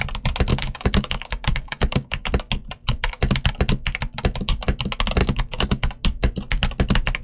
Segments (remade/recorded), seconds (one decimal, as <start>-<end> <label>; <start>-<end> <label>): 0.0-0.5 recorded; 0.5-2.2 remade; 2.2-5.2 recorded; 5.2-5.9 remade; 5.9-7.2 recorded